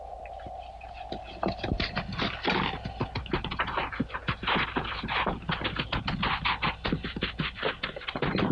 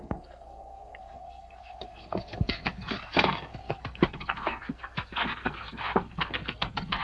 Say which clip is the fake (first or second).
second